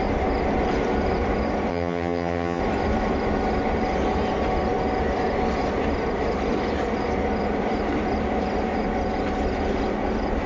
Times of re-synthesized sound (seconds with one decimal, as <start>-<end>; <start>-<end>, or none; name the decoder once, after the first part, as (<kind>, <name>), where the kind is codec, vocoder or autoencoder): 1.7-2.6 (vocoder, HiFi-GAN)